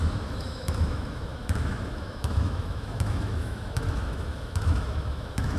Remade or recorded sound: remade